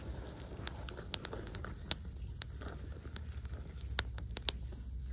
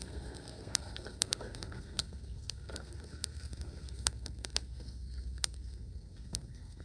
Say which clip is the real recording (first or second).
first